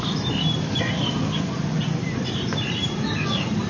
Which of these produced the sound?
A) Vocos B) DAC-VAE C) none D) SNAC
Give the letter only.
C